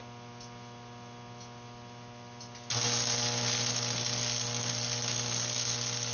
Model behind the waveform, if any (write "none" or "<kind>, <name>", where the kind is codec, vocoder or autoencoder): none